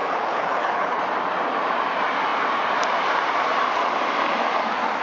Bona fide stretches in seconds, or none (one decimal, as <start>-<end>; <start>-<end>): 1.0-5.0